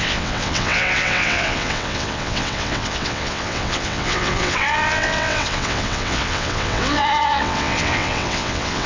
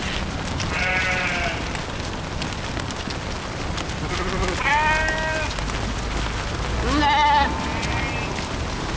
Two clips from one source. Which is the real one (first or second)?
second